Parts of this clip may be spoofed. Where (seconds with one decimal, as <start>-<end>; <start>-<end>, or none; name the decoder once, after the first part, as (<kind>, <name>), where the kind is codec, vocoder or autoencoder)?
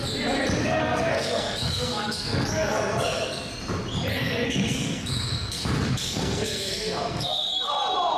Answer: 0.6-3.5 (codec, SNAC); 4.1-7.7